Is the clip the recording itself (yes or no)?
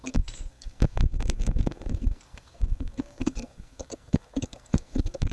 no